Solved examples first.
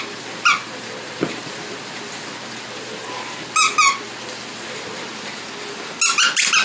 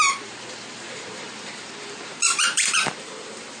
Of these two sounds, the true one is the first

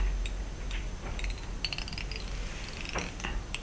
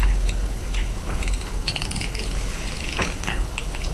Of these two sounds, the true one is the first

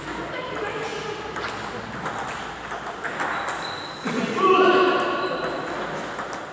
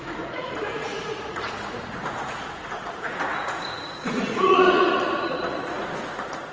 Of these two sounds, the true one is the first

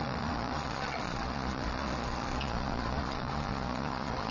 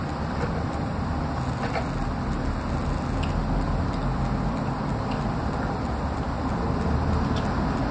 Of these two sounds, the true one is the second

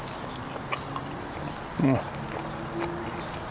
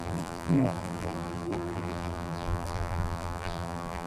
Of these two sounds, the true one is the first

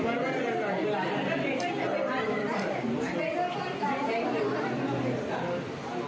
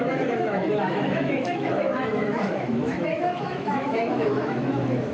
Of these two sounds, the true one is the first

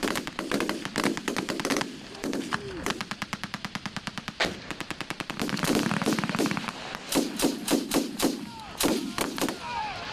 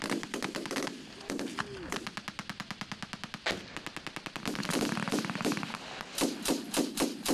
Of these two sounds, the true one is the second